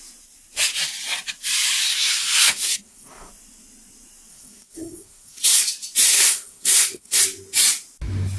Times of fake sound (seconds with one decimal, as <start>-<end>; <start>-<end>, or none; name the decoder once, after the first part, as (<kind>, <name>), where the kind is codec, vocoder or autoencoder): 1.9-3.3 (codec, SNAC); 4.3-5.6; 6.1-7.2